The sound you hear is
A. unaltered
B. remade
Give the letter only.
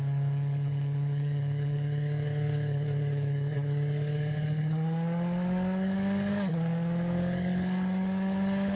B